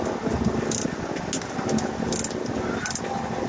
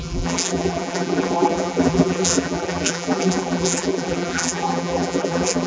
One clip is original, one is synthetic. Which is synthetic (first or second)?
second